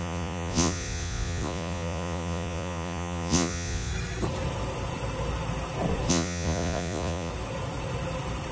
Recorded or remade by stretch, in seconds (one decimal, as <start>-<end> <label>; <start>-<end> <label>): 0.0-3.9 remade; 3.9-6.1 recorded; 6.1-7.3 remade; 7.3-8.5 recorded